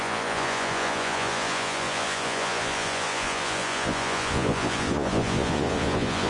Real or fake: fake